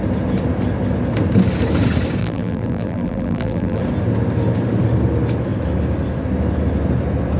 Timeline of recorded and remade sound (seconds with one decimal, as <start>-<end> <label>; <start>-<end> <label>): 0.0-2.2 recorded; 2.2-3.8 remade; 3.8-7.4 recorded